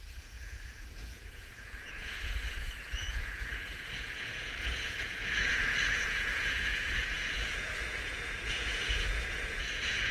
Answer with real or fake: fake